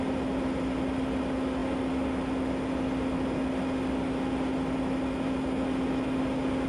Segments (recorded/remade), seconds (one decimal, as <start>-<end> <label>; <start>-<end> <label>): 0.0-6.7 recorded